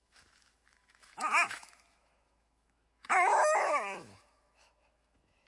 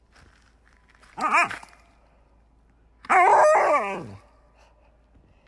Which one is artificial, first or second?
first